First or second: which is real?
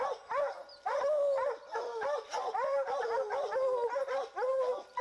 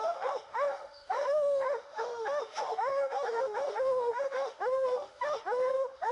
first